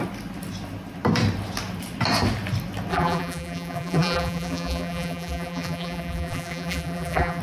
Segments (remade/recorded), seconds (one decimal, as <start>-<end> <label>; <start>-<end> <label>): 0.0-2.9 recorded; 2.9-7.4 remade